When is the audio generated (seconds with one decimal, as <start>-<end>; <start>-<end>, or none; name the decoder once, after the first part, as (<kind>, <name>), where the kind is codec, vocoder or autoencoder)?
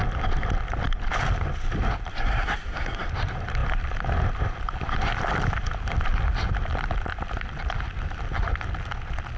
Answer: 2.1-3.1 (codec, SNAC)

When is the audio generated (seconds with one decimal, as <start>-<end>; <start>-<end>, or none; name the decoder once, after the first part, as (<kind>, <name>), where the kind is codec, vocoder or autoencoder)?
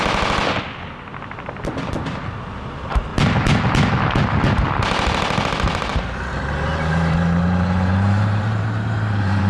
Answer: 5.9-9.5 (vocoder, BigVGAN v2)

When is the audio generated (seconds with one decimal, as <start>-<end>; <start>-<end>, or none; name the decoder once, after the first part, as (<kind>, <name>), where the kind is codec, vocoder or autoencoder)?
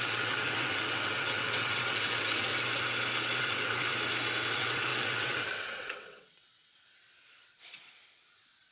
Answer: 0.0-2.5 (vocoder, WaveNeXt); 3.4-3.9; 4.5-8.7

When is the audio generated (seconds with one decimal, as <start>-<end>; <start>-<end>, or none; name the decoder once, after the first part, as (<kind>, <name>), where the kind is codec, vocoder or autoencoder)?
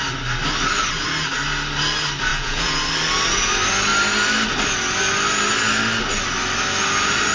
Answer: 2.3-2.8 (vocoder, Vocos)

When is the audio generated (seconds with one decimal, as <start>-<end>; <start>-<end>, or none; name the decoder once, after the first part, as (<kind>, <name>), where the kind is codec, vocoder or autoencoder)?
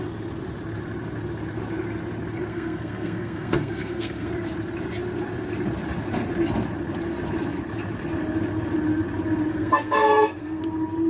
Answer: 2.5-4.3 (codec, SNAC); 9.5-10.6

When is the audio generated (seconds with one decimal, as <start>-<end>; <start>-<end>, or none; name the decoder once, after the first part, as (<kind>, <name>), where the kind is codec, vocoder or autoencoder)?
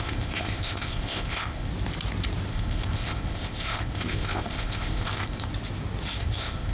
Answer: 0.0-1.7 (codec, ZipCodec); 2.5-5.5; 6.2-6.7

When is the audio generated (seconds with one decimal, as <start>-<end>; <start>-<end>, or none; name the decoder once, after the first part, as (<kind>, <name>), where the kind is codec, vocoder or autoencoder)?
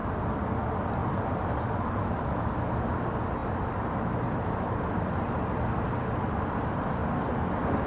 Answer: 1.0-2.5 (vocoder, BigVGAN v2); 3.4-5.6